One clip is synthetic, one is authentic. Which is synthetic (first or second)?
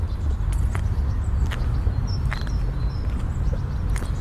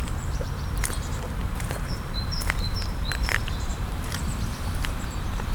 second